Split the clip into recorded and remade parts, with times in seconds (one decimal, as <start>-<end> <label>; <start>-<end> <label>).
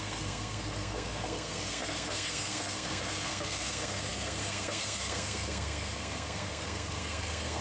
0.0-7.6 remade